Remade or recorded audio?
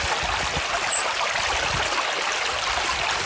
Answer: recorded